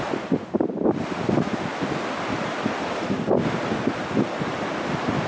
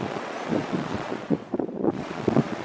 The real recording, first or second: first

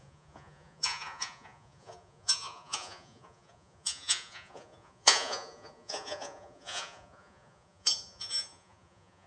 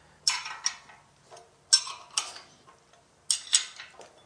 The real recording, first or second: second